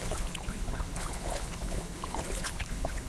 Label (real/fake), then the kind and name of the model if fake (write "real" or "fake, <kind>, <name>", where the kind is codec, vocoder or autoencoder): fake, codec, HILCodec